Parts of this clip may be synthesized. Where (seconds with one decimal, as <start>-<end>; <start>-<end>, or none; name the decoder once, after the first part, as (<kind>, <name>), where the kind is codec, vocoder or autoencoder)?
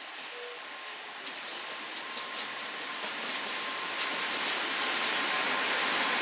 none